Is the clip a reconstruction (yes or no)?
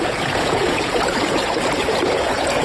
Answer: yes